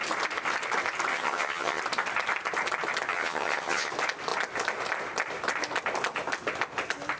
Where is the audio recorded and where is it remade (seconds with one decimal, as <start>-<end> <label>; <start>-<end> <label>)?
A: 0.0-1.1 recorded; 1.1-1.8 remade; 1.8-3.1 recorded; 3.1-3.9 remade; 3.9-7.2 recorded